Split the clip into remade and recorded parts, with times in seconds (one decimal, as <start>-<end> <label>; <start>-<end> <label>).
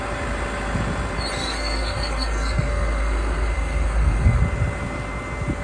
0.0-1.4 recorded; 1.4-4.4 remade; 4.4-5.6 recorded